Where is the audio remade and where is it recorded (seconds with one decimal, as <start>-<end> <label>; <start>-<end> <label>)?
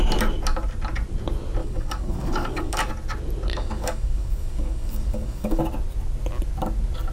0.0-1.6 recorded; 1.6-2.9 remade; 2.9-3.5 recorded; 3.5-5.6 remade; 5.6-7.1 recorded